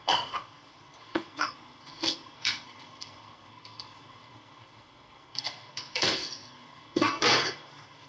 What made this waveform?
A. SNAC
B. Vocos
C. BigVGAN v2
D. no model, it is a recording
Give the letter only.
A